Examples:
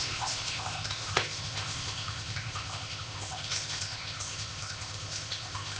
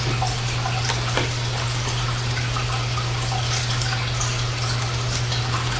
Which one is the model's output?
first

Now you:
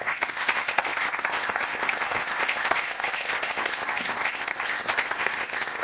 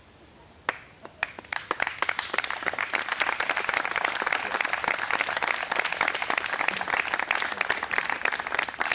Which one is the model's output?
first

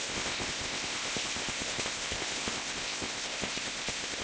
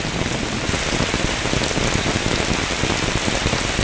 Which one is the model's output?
first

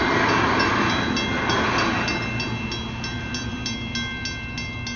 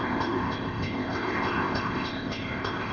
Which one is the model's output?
second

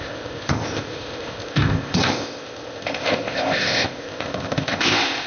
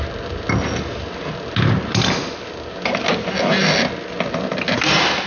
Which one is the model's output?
first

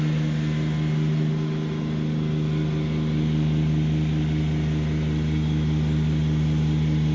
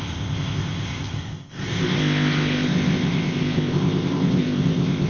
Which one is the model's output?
second